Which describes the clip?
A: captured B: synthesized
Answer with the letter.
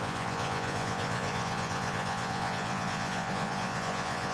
B